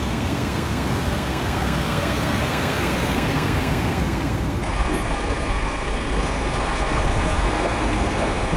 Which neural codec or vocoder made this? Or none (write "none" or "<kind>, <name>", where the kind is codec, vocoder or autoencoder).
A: codec, SNAC